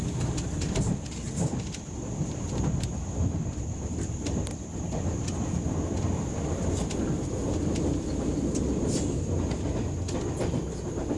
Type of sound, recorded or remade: recorded